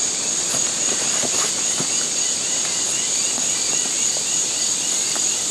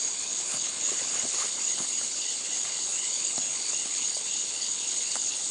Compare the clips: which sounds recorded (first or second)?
first